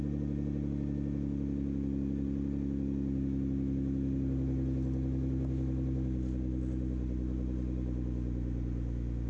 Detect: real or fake real